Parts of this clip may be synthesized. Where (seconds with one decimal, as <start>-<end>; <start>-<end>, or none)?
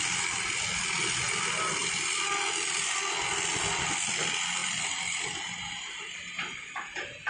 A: none